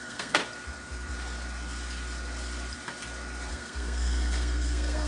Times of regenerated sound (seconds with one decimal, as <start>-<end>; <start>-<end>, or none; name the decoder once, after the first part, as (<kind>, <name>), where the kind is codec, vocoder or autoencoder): 0.0-0.4 (codec, SNAC); 3.5-5.1